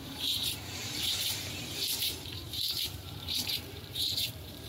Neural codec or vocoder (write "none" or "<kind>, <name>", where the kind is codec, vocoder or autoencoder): vocoder, BigVGAN v2